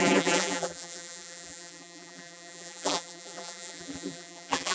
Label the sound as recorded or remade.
remade